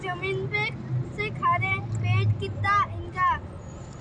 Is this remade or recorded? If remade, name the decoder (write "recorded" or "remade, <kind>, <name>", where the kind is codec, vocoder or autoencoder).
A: recorded